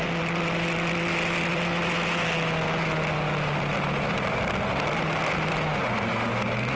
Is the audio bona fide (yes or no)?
yes